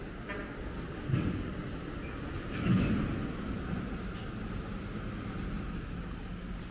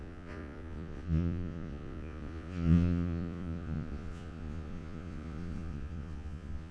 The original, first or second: first